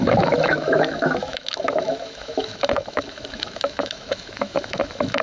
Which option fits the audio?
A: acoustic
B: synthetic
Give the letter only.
B